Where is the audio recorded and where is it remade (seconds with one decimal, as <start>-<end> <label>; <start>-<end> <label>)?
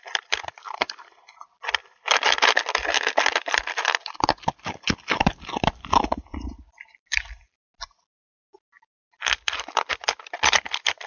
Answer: 0.0-11.1 recorded